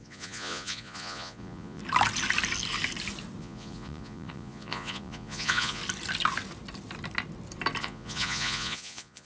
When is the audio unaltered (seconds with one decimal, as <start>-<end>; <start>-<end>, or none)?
1.8-3.4; 5.8-7.8